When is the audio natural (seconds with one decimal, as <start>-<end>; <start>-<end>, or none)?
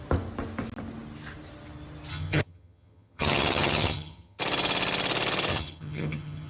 0.0-2.1; 4.4-5.5